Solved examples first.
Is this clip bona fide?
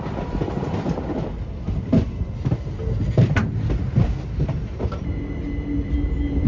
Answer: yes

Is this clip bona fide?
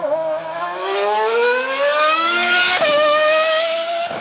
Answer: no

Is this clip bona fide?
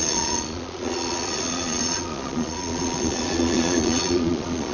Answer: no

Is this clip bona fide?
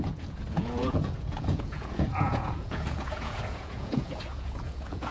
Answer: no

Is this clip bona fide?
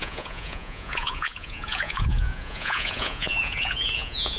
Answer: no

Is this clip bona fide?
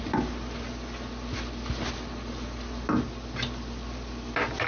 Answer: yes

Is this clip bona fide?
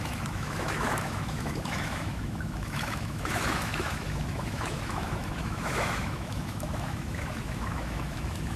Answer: no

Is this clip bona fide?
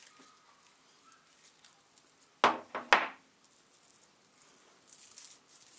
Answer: yes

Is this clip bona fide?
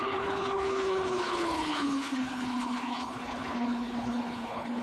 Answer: no